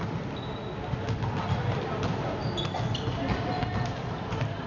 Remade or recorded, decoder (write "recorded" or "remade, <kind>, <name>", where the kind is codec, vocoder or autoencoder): recorded